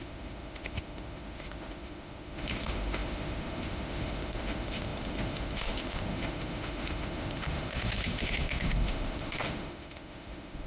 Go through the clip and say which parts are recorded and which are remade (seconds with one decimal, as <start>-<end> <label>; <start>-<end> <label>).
0.0-10.7 remade